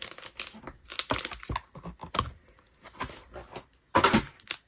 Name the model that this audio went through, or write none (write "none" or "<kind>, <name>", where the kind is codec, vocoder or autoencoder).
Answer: none